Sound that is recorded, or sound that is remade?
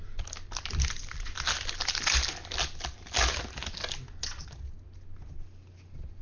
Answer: recorded